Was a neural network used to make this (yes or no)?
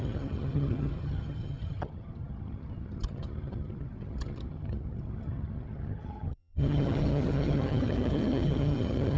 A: yes